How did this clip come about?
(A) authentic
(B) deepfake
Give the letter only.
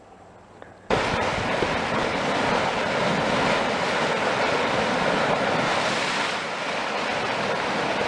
A